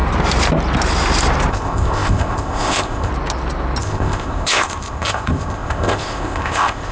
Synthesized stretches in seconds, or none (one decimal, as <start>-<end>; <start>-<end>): 1.5-3.1; 3.8-6.9